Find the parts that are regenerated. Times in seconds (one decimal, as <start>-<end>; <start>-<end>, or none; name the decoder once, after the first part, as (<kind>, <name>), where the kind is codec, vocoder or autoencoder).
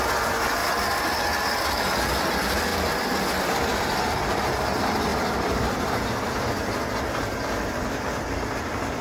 2.7-3.4 (vocoder, BigVGAN v2); 5.1-6.0